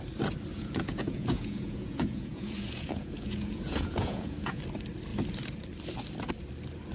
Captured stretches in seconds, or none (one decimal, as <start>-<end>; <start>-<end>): 0.0-0.5; 4.6-6.9